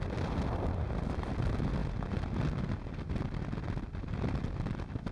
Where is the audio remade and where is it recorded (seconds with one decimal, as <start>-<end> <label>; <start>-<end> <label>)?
0.0-5.1 recorded